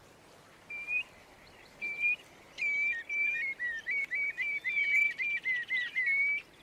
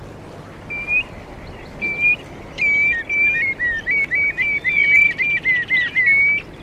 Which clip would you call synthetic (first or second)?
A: first